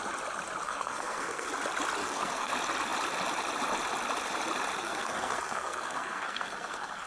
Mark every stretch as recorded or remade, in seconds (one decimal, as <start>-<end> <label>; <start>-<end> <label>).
0.0-0.6 recorded; 0.6-1.5 remade; 1.5-2.0 recorded; 2.0-2.5 remade; 2.5-4.8 recorded; 4.8-7.1 remade